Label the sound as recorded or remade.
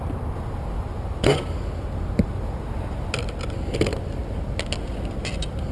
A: recorded